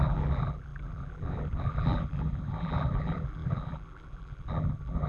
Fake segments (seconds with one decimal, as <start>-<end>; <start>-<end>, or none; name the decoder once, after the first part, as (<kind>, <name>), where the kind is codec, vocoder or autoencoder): 0.0-5.1 (vocoder, BigVGAN v2)

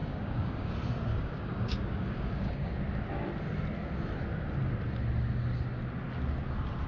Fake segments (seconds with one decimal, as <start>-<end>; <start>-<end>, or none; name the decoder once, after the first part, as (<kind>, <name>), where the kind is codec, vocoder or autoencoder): 0.0-0.7 (codec, DAC); 1.1-2.7

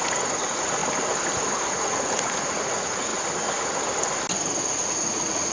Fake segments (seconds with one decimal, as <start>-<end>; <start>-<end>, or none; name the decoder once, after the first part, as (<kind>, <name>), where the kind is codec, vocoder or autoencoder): 0.0-0.8 (vocoder, Vocos); 1.7-3.1; 4.7-5.5

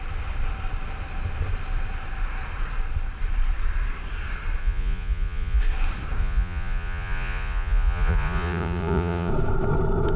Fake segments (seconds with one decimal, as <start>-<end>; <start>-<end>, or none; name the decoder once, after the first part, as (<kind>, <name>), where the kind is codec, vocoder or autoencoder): 4.6-5.6 (vocoder, Vocos); 6.2-9.3

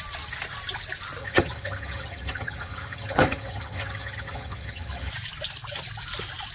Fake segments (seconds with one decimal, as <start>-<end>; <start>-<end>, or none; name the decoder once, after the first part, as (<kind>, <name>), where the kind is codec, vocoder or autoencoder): 1.2-5.1 (vocoder, HiFi-GAN)

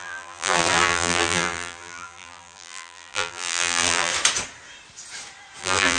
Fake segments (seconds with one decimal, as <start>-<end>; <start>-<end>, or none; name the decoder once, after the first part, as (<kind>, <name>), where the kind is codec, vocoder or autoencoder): 0.0-4.1 (vocoder, BigVGAN v2); 5.6-6.0

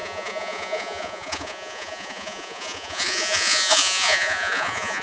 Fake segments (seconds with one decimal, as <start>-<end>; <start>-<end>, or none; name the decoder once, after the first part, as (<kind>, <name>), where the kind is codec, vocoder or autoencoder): 0.0-5.0 (vocoder, Vocos)